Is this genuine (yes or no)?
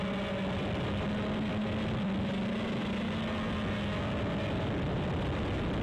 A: yes